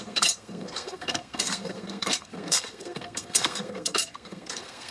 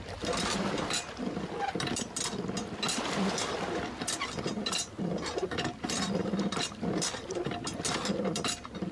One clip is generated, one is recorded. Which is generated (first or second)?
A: first